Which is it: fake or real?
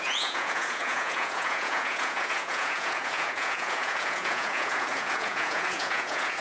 fake